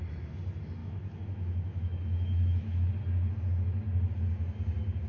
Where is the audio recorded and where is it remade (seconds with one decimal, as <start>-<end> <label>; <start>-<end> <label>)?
0.0-0.8 recorded; 0.8-2.9 remade; 2.9-5.1 recorded